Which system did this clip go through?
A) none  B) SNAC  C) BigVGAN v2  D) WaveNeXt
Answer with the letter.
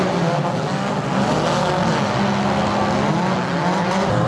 A